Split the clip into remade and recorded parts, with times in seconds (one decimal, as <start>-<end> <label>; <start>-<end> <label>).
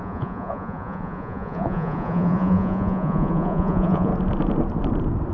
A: 0.0-4.1 remade; 4.1-5.3 recorded